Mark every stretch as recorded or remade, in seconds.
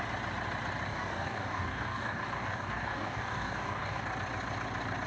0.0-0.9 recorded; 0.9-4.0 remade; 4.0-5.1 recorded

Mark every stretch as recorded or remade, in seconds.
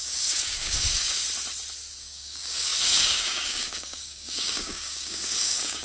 0.0-1.2 remade; 1.2-2.0 recorded; 2.0-5.8 remade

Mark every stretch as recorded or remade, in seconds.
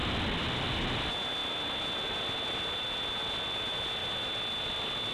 0.0-5.1 recorded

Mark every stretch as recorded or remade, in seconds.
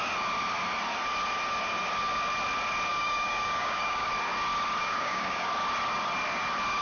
0.0-2.9 recorded; 2.9-4.1 remade; 4.1-4.8 recorded; 4.8-5.5 remade; 5.5-6.8 recorded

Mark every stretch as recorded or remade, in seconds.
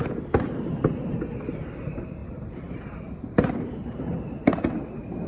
0.0-5.3 recorded